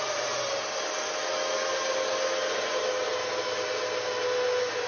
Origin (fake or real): real